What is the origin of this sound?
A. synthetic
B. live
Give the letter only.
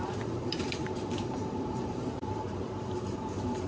A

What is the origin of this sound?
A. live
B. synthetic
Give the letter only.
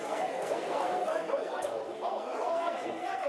B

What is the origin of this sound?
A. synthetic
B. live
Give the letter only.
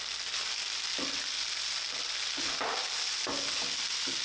B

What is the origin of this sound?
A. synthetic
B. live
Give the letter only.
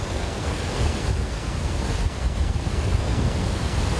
A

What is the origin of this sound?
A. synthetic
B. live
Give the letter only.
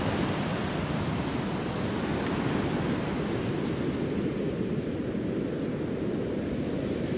B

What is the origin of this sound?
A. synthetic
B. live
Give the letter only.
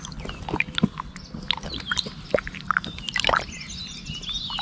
B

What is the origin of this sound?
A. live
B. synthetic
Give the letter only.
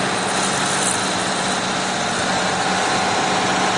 A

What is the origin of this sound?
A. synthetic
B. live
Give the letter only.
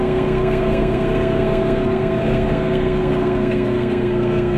A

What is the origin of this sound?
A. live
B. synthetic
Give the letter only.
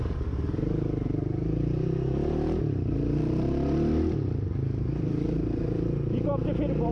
A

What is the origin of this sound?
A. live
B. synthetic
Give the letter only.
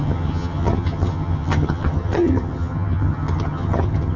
B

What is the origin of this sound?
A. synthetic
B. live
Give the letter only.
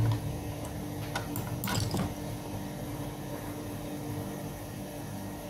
B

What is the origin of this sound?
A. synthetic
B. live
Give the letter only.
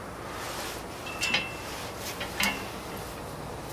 B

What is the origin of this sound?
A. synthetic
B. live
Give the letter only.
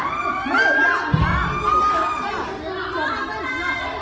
B